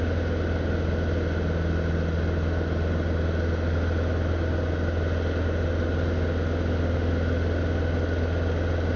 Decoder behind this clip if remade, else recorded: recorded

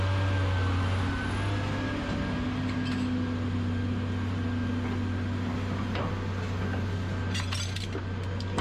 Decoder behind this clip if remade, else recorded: recorded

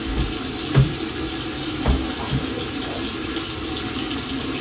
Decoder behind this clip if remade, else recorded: recorded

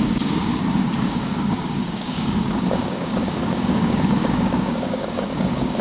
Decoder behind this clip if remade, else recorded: remade, codec, DAC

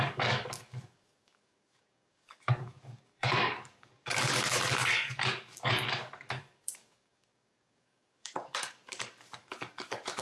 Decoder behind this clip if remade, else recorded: remade, codec, DAC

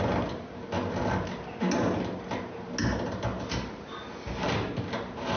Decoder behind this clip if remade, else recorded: recorded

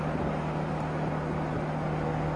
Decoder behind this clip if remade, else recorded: recorded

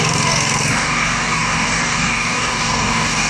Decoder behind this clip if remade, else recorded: remade, codec, DAC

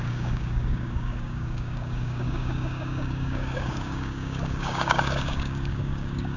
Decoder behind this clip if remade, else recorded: remade, codec, DAC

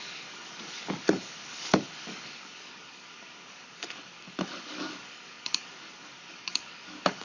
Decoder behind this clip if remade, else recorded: remade, codec, DAC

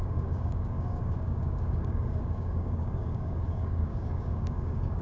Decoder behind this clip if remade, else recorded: remade, codec, DAC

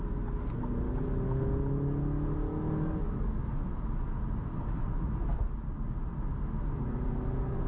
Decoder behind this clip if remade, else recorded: recorded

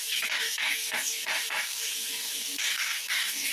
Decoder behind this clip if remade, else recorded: remade, codec, DAC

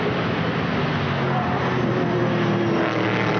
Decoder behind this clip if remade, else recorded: recorded